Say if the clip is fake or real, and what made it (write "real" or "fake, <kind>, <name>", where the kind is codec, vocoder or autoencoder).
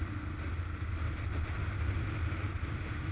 real